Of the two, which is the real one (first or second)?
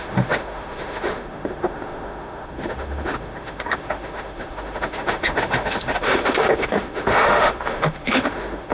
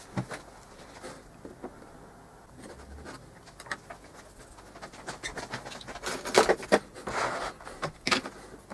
second